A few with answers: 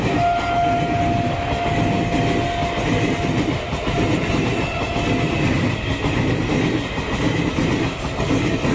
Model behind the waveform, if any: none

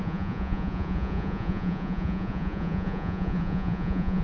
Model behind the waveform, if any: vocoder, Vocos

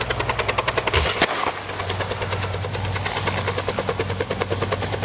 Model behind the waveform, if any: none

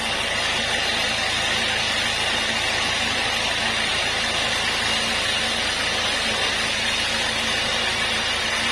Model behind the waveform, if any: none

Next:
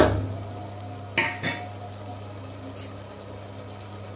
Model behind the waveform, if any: none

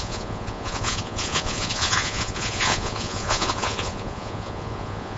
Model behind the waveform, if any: vocoder, Vocos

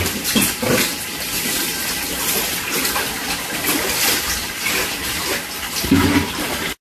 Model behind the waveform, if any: none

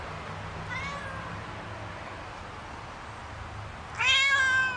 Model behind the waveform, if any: none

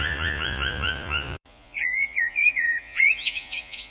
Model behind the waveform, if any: vocoder, Vocos